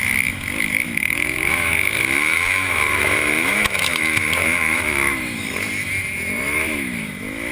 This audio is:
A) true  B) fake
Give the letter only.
B